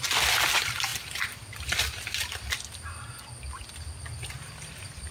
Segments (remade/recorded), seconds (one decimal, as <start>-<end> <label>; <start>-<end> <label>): 0.0-5.1 recorded